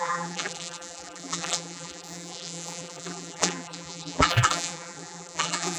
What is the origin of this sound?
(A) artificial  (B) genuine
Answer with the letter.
A